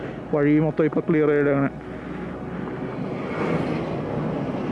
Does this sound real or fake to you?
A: real